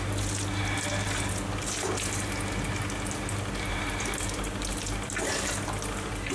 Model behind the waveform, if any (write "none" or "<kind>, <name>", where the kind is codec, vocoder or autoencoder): none